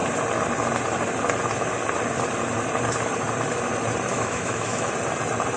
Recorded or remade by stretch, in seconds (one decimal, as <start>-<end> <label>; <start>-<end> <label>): 0.0-4.1 recorded; 4.1-4.9 remade; 4.9-5.6 recorded